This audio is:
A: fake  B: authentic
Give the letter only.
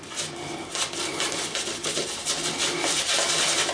A